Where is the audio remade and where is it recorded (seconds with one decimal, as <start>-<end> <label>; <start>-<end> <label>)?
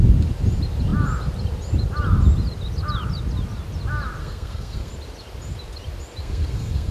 0.0-4.2 recorded; 4.2-4.9 remade; 4.9-6.2 recorded; 6.2-6.9 remade